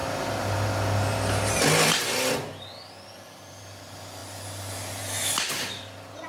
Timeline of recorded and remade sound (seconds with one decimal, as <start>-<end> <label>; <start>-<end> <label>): 0.0-6.3 recorded